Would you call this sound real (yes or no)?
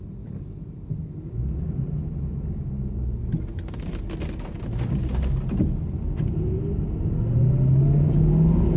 yes